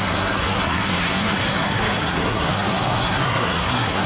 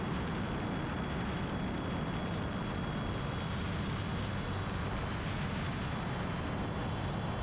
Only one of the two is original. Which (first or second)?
second